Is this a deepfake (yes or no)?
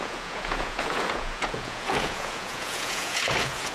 yes